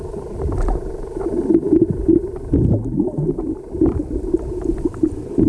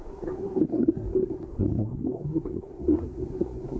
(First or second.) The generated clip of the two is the second